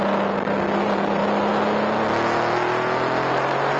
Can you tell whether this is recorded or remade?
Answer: recorded